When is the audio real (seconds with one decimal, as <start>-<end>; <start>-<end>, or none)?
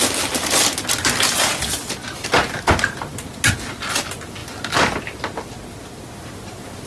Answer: 0.0-6.9